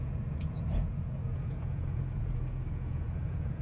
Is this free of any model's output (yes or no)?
no